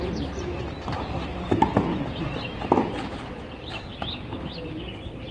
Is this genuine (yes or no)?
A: yes